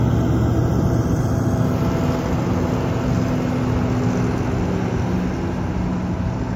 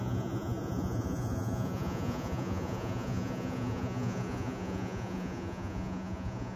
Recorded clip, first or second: first